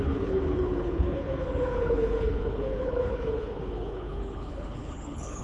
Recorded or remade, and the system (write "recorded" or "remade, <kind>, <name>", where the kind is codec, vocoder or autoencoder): remade, codec, HILCodec